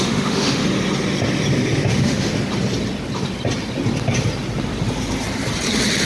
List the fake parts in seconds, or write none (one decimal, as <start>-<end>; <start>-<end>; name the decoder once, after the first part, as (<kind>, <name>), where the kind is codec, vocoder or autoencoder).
0.0-0.6 (autoencoder, DAC-VAE); 1.9-2.3